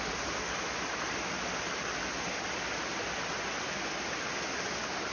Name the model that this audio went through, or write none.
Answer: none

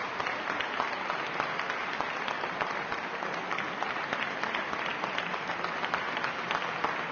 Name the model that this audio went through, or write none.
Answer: none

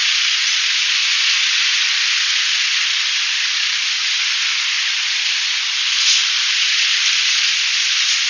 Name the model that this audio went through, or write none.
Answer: none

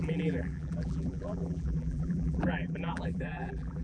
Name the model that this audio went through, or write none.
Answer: vocoder, BigVGAN v2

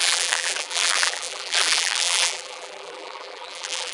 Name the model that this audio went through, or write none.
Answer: vocoder, BigVGAN v2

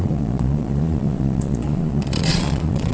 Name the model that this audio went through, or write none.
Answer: vocoder, Vocos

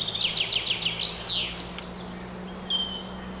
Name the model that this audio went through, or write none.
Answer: none